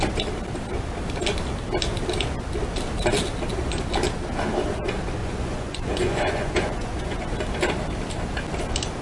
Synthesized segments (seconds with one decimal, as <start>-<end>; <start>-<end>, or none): 5.2-7.3